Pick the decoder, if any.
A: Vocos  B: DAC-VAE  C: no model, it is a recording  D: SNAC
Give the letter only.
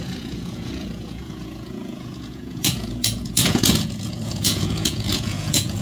A